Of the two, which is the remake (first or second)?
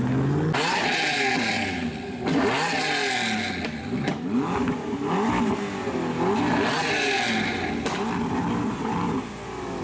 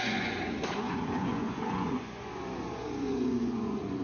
second